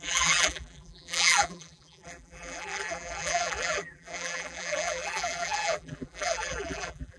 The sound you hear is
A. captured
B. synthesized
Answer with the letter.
B